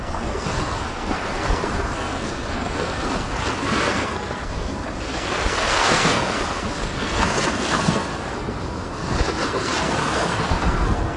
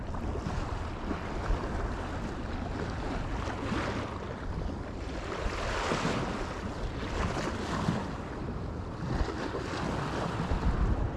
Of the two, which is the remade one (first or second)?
first